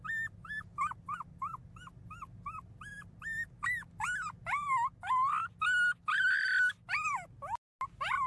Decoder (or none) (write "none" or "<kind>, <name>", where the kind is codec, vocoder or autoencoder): none